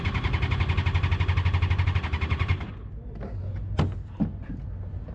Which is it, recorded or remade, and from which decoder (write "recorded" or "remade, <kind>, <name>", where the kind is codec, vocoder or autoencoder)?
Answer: recorded